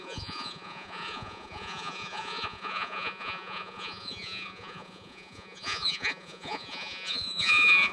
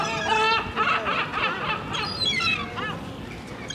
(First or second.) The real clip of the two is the second